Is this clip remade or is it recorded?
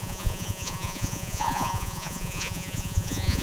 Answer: remade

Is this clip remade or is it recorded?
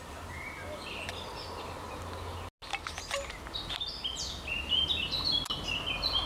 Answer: recorded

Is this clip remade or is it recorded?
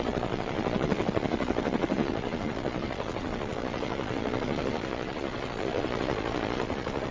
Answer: remade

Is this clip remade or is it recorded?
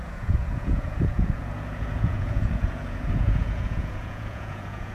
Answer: remade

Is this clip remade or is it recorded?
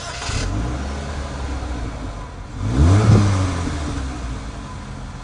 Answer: recorded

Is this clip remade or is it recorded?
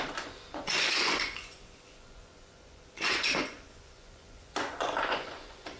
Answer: remade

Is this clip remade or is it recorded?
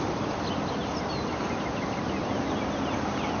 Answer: recorded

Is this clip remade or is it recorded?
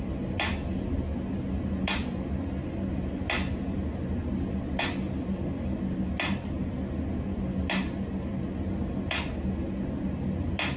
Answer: recorded